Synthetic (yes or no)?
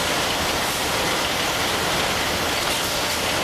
no